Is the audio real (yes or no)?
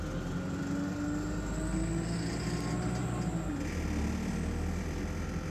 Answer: yes